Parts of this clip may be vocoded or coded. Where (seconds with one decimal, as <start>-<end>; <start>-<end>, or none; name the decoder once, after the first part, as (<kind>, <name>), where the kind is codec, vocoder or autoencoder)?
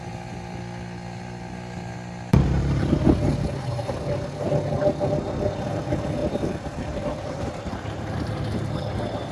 2.3-2.9 (vocoder, BigVGAN v2); 6.2-8.3